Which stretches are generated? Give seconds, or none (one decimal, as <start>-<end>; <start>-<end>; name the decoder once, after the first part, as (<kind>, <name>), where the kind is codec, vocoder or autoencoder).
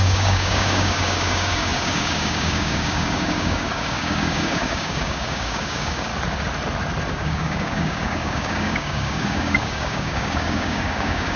0.0-6.1 (codec, DAC); 7.1-11.4